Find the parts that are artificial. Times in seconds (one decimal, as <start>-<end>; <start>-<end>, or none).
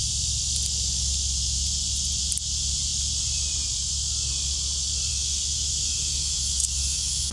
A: 5.1-7.3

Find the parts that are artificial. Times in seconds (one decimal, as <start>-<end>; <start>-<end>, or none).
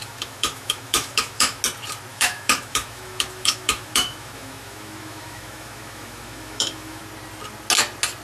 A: 0.0-1.6; 2.1-7.0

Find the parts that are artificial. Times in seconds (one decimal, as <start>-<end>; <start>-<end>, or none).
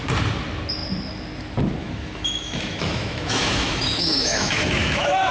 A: 1.8-5.3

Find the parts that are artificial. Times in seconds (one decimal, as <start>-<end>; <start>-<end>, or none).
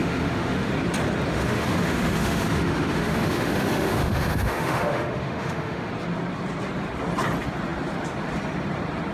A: 0.0-0.7; 1.3-5.9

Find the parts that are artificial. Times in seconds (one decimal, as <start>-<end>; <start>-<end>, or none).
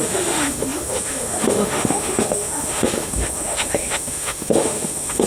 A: 0.0-5.3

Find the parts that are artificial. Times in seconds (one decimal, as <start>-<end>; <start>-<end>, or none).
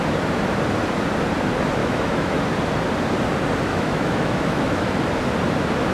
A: 1.8-2.4; 3.7-4.9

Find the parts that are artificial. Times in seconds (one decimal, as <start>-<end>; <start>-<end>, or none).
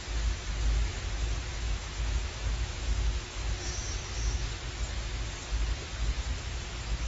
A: 1.5-3.2